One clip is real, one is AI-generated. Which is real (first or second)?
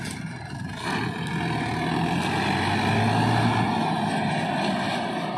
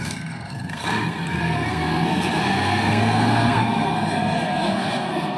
first